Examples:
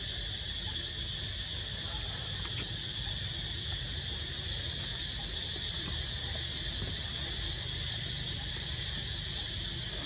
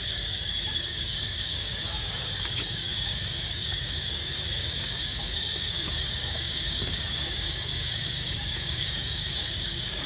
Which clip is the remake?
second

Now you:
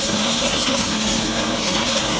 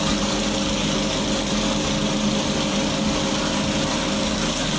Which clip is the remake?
first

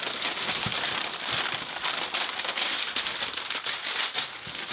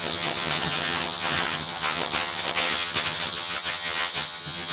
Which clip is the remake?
second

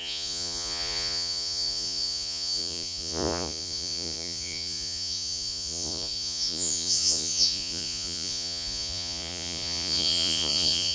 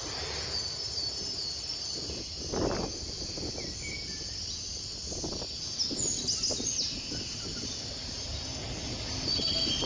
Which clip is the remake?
first